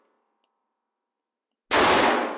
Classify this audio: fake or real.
real